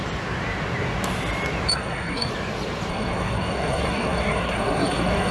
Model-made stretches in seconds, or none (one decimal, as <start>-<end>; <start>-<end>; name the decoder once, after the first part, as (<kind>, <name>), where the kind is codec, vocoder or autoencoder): 1.7-2.3 (codec, SNAC); 2.9-5.3